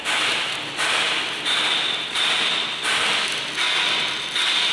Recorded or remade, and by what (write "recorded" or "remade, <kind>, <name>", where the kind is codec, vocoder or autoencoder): recorded